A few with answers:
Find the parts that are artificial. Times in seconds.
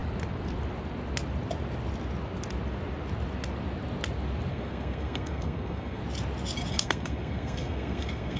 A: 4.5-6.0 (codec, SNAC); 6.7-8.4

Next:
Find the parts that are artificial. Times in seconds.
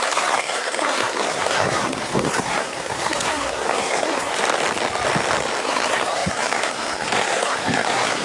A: 0.0-4.3 (codec, SNAC); 5.6-8.2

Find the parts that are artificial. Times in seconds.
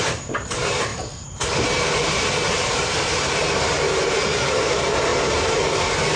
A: 0.0-6.2 (vocoder, BigVGAN v2)